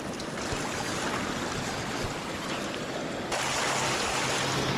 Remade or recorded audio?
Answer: recorded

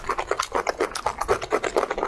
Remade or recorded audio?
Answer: recorded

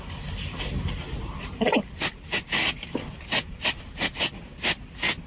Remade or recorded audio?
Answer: recorded